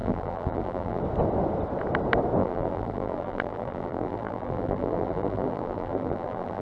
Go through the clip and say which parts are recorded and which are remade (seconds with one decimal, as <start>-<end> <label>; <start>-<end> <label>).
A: 0.0-1.0 remade; 1.0-2.4 recorded; 2.4-6.6 remade